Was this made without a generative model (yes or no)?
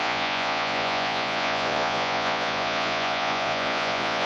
no